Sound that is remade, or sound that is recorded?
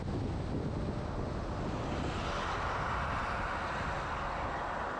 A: recorded